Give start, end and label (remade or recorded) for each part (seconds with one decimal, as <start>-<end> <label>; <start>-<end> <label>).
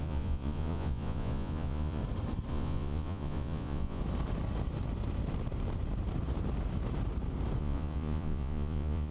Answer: 0.0-2.0 remade; 2.0-2.5 recorded; 2.5-4.0 remade; 4.0-7.6 recorded; 7.6-9.1 remade